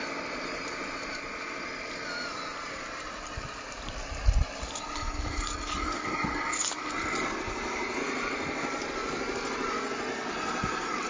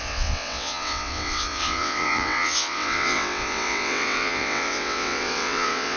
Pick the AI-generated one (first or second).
second